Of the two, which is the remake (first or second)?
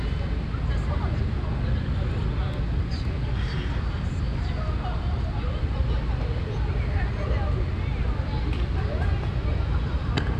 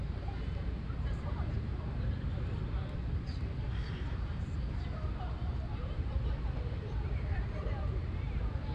second